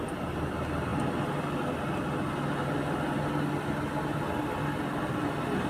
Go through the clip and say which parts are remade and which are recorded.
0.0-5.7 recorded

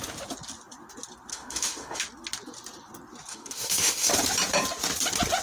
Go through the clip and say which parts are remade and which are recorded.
0.0-1.3 recorded; 1.3-2.0 remade; 2.0-3.3 recorded; 3.3-4.1 remade; 4.1-5.4 recorded